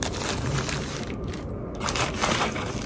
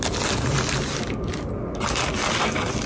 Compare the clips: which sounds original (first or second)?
second